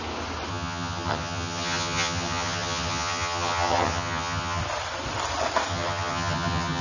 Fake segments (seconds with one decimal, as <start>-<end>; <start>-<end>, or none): 0.5-4.6; 5.7-6.8